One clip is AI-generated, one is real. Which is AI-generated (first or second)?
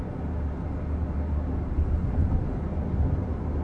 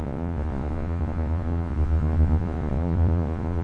second